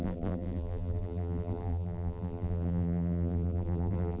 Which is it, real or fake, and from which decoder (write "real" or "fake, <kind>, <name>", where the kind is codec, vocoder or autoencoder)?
fake, vocoder, BigVGAN v2